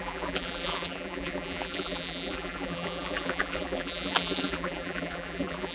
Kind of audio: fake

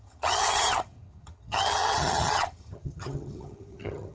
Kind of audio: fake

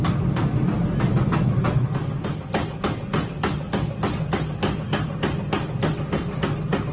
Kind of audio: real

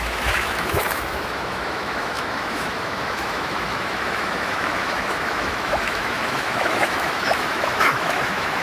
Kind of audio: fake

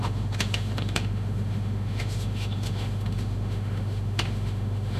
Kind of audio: fake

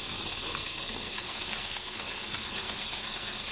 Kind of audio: fake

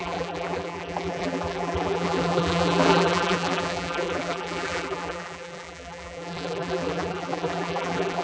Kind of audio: fake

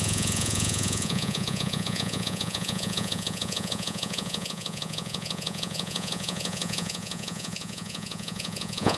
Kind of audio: fake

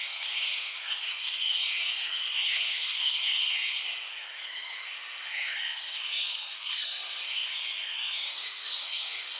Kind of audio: fake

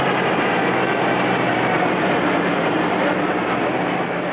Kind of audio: real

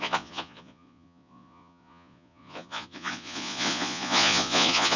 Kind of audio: fake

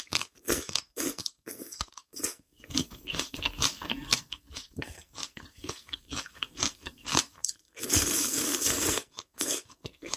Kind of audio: fake